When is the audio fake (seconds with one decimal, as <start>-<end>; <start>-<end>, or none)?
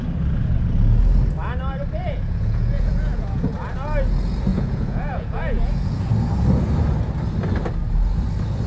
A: 2.0-3.5; 4.5-6.1